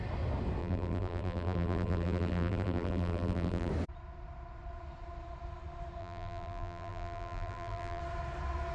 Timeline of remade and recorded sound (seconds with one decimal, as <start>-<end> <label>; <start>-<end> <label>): 0.0-0.6 recorded; 0.6-3.7 remade; 3.7-6.0 recorded; 6.0-8.0 remade; 8.0-8.7 recorded